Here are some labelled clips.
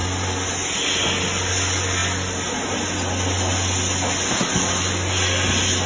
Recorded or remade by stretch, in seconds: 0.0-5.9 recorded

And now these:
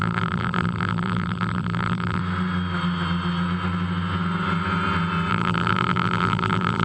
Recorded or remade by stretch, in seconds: 0.0-2.2 remade; 2.2-5.3 recorded; 5.3-6.8 remade

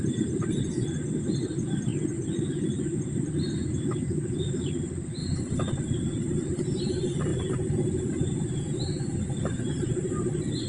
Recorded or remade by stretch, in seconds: 0.0-10.7 recorded

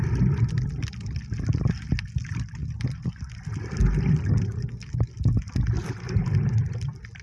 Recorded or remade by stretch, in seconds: 0.0-7.2 recorded

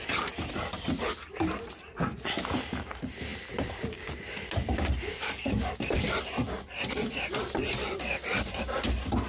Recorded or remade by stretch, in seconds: 0.0-5.1 recorded; 5.1-6.0 remade; 6.0-9.3 recorded